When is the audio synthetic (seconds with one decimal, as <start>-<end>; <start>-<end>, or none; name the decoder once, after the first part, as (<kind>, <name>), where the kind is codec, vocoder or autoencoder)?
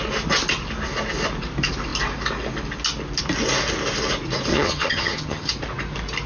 4.5-5.5 (vocoder, HiFi-GAN)